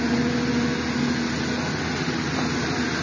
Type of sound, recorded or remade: recorded